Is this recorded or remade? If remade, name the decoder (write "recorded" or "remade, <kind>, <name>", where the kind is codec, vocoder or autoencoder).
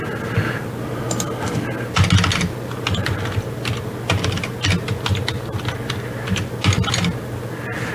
recorded